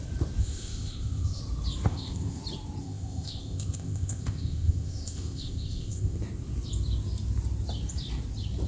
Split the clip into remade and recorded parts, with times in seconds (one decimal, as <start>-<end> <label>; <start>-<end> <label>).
0.0-0.4 recorded; 0.4-1.4 remade; 1.4-1.9 recorded; 1.9-2.4 remade; 2.4-2.8 recorded; 2.8-6.2 remade; 6.2-8.7 recorded